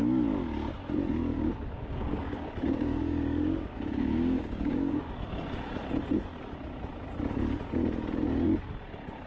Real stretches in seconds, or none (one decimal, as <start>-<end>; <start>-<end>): 0.0-1.3; 5.1-9.3